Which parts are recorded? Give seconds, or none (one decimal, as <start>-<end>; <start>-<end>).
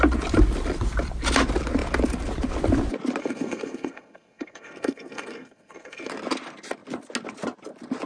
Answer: 0.0-3.2; 6.1-8.1